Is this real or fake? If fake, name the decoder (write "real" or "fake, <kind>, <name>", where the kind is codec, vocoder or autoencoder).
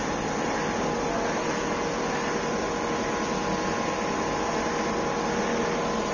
real